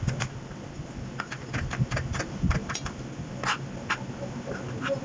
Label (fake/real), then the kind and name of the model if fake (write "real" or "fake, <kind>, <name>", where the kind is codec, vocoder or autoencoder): real